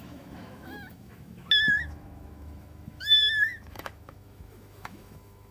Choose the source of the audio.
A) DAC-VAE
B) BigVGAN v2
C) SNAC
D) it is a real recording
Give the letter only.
A